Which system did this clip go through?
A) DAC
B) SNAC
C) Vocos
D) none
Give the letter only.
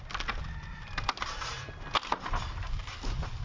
D